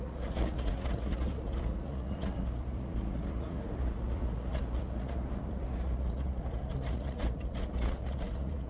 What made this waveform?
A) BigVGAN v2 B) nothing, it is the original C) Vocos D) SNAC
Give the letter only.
C